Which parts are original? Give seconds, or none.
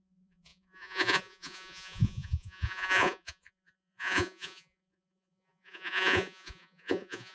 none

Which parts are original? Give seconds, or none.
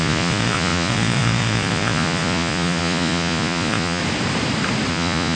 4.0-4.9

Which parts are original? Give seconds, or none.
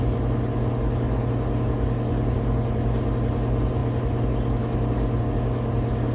0.0-6.1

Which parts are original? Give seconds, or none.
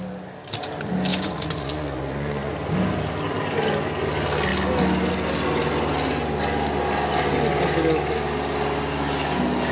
0.0-1.1; 2.5-9.7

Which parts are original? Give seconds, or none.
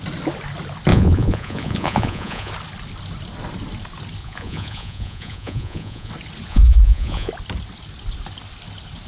0.0-0.9; 2.5-4.2; 6.1-6.5; 7.3-9.1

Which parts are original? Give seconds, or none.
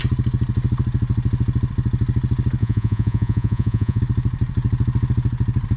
0.0-2.6; 4.0-5.8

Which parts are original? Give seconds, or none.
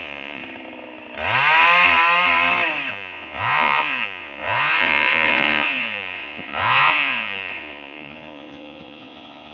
0.4-2.9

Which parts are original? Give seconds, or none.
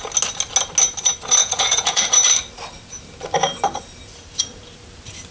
0.0-1.4; 2.0-5.3